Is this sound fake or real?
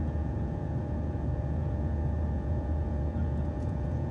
fake